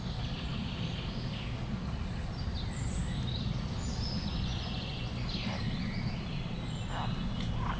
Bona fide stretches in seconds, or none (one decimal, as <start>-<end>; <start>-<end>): 0.0-4.3; 5.3-7.8